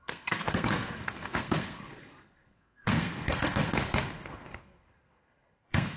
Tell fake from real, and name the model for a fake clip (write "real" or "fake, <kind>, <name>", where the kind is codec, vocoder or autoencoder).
fake, codec, SNAC